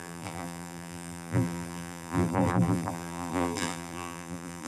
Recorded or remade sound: remade